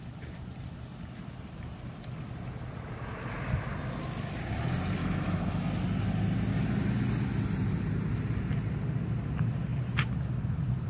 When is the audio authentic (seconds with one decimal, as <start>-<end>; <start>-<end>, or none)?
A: 0.0-5.0; 5.7-10.9